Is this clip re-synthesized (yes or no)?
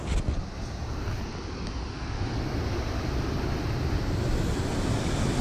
no